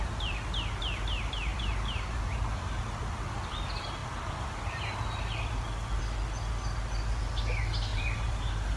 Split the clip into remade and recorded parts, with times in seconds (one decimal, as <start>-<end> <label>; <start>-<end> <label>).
0.0-1.5 recorded; 1.5-2.7 remade; 2.7-7.9 recorded; 7.9-8.8 remade